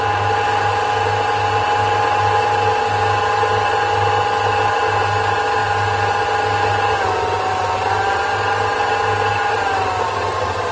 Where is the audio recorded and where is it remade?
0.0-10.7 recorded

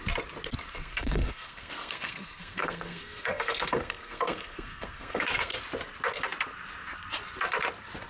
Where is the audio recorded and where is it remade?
0.0-0.7 recorded; 0.7-5.6 remade; 5.6-8.1 recorded

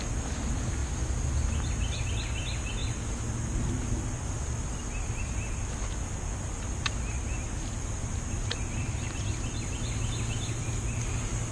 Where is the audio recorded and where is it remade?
0.0-11.5 recorded

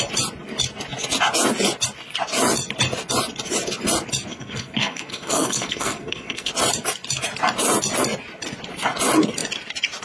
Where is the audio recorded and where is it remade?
0.0-4.3 recorded; 4.3-6.5 remade; 6.5-10.0 recorded

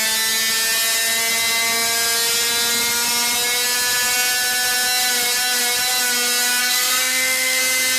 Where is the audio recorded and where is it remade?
0.0-6.6 recorded; 6.6-7.6 remade; 7.6-8.0 recorded

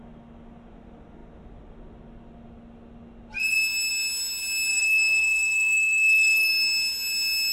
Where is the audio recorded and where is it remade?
0.0-4.7 recorded; 4.7-6.5 remade; 6.5-7.5 recorded